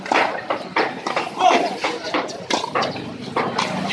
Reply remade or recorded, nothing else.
recorded